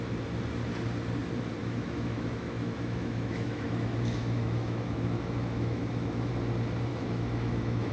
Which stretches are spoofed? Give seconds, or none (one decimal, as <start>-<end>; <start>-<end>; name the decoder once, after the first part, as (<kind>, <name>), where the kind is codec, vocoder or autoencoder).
1.6-6.3 (autoencoder, DAC-VAE); 6.9-7.9